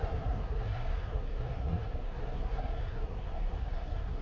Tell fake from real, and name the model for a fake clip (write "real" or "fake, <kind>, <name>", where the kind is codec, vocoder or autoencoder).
fake, codec, SNAC